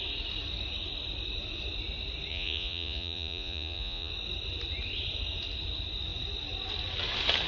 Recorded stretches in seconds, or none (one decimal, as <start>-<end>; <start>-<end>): 0.0-2.3; 4.1-7.5